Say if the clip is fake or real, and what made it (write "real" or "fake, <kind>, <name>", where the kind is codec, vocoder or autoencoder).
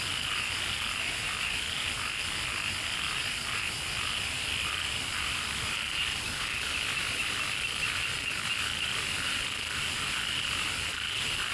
real